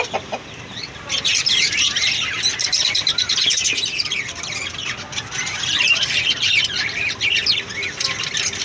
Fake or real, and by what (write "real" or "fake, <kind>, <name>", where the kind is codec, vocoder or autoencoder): fake, vocoder, BigVGAN v2